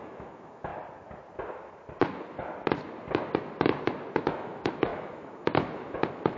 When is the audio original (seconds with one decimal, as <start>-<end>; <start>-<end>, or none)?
0.7-4.1